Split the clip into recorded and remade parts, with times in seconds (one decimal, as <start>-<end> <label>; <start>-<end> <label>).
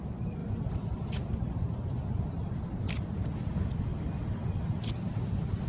0.0-3.9 remade; 3.9-5.1 recorded; 5.1-5.7 remade